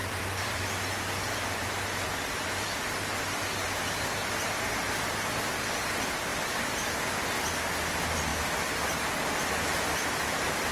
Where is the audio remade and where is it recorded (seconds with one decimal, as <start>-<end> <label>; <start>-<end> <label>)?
0.0-0.6 remade; 0.6-6.3 recorded; 6.3-6.9 remade; 6.9-8.3 recorded; 8.3-9.0 remade; 9.0-10.7 recorded